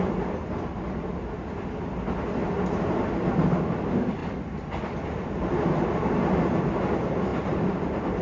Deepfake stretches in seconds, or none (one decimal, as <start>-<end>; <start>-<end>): none